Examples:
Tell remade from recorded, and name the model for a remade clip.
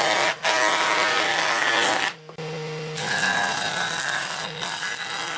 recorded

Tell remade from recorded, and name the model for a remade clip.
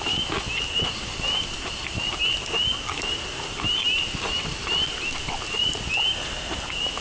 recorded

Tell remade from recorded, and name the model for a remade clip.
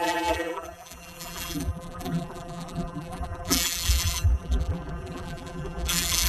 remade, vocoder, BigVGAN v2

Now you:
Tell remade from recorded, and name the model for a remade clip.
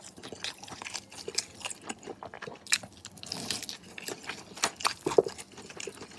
recorded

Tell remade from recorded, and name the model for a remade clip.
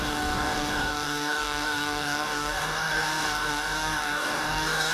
remade, codec, DAC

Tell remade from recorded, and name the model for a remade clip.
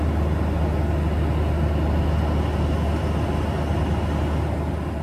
recorded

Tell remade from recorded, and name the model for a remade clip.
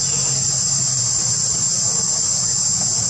recorded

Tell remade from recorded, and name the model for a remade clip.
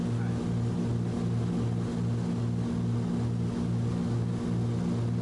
recorded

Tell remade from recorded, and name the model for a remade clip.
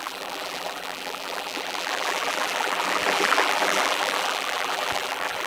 remade, vocoder, BigVGAN v2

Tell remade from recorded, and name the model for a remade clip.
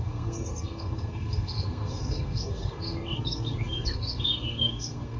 remade, codec, SNAC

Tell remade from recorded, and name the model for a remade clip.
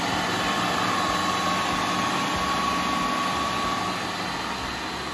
recorded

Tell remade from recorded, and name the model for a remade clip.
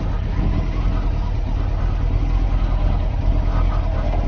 recorded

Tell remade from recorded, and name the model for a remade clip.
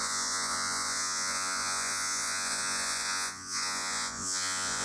remade, vocoder, Vocos